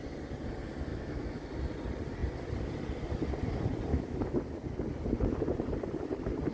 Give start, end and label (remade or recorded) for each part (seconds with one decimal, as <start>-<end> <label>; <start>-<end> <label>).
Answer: 0.0-0.9 recorded; 0.9-1.5 remade; 1.5-3.9 recorded; 3.9-4.4 remade; 4.4-6.5 recorded